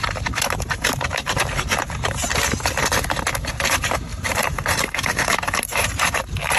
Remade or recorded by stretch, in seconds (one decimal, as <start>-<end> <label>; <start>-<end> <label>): 0.0-2.3 remade; 2.3-3.5 recorded; 3.5-6.6 remade